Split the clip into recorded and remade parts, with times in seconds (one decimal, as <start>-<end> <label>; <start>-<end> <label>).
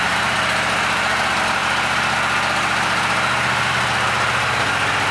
0.0-5.1 recorded